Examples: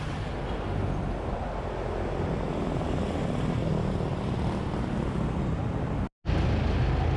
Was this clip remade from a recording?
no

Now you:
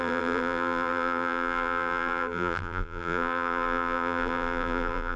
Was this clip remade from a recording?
yes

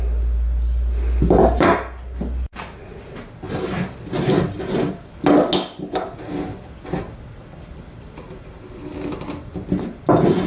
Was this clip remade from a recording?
no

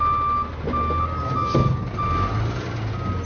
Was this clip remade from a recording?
no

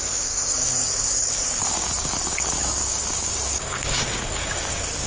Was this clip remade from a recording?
yes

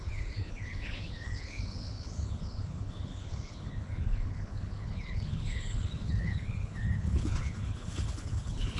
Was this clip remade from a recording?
yes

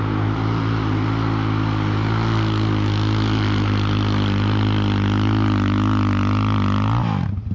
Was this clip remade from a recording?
no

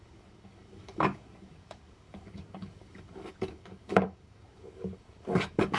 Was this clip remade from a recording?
yes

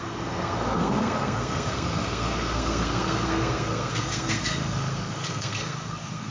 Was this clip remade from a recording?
yes